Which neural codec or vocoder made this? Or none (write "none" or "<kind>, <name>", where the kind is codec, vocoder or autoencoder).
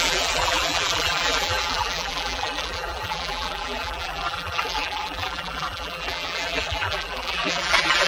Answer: vocoder, BigVGAN v2